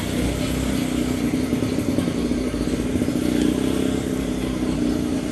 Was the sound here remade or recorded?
recorded